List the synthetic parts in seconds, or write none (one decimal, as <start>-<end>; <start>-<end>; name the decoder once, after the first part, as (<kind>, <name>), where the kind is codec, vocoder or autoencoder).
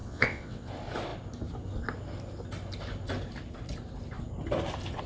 0.0-0.7 (vocoder, WaveNeXt)